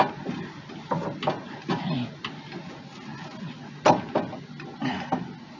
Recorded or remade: recorded